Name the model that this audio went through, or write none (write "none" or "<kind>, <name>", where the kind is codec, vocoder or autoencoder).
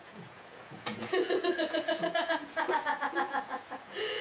vocoder, Vocos